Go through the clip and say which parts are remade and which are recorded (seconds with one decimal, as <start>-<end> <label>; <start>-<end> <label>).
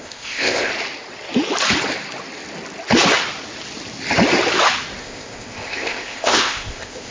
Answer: 0.0-0.7 remade; 0.7-5.0 recorded; 5.0-7.1 remade